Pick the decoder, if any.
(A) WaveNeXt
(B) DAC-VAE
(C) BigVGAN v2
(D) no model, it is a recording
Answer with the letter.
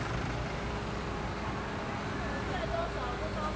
D